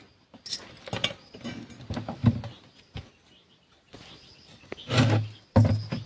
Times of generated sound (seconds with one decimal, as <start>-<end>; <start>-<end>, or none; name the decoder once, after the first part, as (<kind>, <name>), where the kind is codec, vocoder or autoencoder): none